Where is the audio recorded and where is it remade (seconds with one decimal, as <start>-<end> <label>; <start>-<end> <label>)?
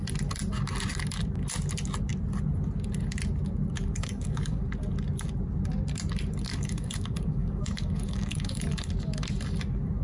0.0-3.8 recorded; 3.8-4.6 remade; 4.6-6.5 recorded; 6.5-8.9 remade; 8.9-10.0 recorded